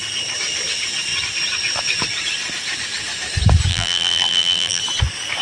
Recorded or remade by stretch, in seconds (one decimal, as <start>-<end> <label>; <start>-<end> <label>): 0.0-3.7 recorded; 3.7-4.8 remade; 4.8-5.4 recorded